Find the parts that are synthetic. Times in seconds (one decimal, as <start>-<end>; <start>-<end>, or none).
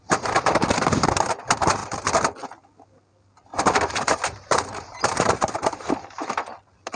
3.5-5.9